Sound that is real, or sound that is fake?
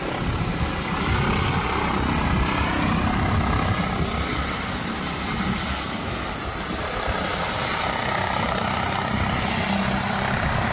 real